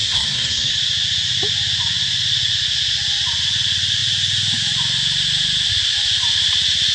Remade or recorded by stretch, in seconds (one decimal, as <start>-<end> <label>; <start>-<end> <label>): 0.0-0.7 remade; 0.7-6.9 recorded